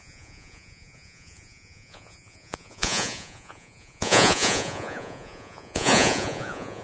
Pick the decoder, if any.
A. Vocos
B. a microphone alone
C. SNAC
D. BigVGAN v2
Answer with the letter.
A